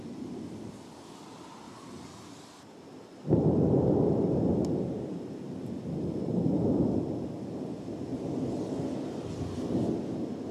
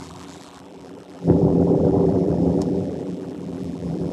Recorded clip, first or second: first